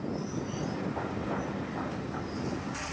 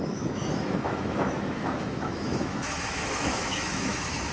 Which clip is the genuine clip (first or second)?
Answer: first